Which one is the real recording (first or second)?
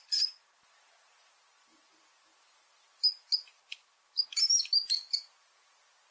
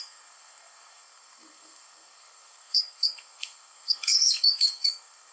first